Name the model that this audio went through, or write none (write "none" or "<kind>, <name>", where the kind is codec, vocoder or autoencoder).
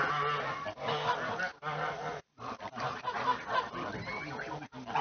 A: none